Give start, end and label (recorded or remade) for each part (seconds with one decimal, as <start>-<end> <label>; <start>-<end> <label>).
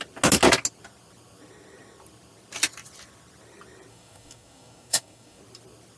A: 0.0-3.9 recorded; 3.9-5.4 remade; 5.4-6.0 recorded